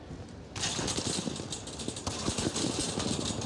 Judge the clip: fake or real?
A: real